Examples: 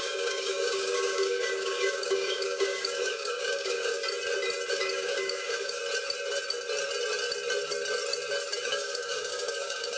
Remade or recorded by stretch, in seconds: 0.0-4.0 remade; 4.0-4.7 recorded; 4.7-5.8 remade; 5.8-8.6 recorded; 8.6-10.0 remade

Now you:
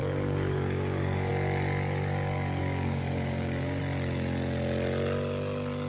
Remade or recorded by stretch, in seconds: 0.0-1.3 remade; 1.3-2.6 recorded; 2.6-3.8 remade; 3.8-5.9 recorded

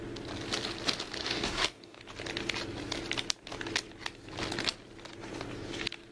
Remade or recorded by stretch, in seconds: 0.0-1.2 recorded; 1.2-2.0 remade; 2.0-6.1 recorded

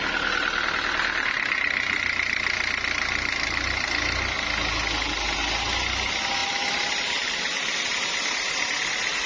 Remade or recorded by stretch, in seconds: 0.0-9.3 recorded

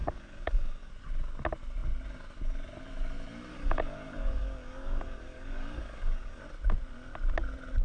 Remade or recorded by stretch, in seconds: 0.0-0.9 remade; 0.9-3.5 recorded; 3.5-6.4 remade; 6.4-7.8 recorded